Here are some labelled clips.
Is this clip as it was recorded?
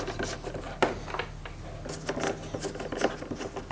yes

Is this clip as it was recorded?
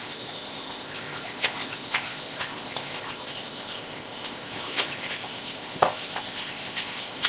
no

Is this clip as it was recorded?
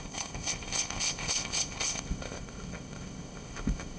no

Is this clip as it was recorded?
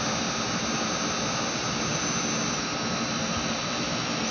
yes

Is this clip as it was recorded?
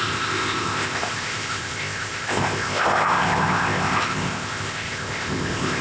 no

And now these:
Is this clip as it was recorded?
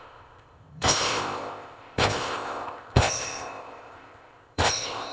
no